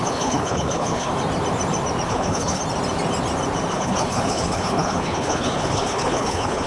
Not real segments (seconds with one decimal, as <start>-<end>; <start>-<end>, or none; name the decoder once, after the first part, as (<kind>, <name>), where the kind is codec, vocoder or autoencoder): 0.0-1.1 (codec, HILCodec); 2.1-2.6; 3.7-6.7